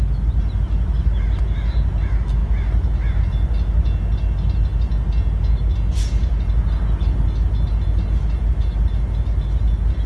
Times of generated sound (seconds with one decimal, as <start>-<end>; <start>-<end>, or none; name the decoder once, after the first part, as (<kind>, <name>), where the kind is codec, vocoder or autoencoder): none